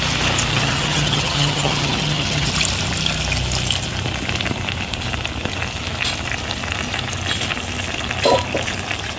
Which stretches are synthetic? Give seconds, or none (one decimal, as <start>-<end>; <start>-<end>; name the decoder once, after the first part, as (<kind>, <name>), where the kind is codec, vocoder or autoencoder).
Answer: 0.5-2.5 (vocoder, HiFi-GAN)